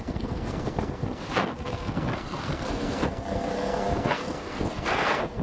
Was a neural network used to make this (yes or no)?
yes